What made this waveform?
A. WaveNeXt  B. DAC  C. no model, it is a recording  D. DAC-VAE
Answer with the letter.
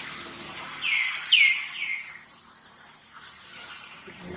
C